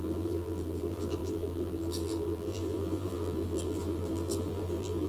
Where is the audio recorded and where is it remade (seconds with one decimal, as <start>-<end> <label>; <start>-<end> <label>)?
0.0-5.1 remade